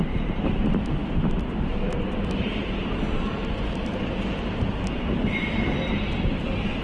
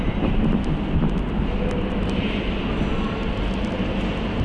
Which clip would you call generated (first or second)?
first